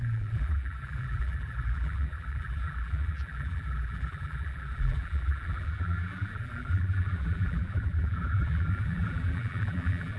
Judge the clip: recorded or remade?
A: remade